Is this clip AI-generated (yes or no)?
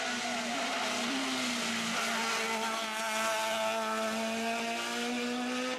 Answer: no